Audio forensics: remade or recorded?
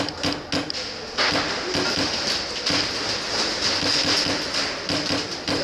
recorded